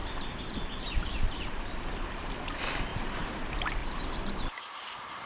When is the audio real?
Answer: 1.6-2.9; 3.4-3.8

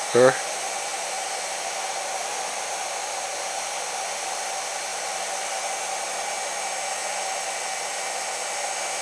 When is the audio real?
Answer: 0.0-0.9; 2.2-4.9; 5.7-9.0

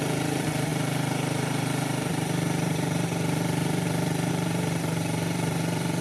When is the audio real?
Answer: none

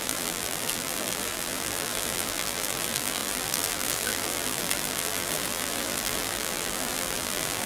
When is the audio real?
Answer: none